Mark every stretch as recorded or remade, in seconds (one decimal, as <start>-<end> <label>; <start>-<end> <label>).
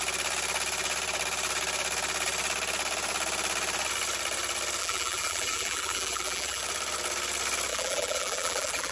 0.0-4.8 recorded; 4.8-6.6 remade; 6.6-7.7 recorded; 7.7-8.9 remade